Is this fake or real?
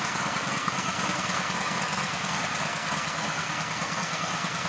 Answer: fake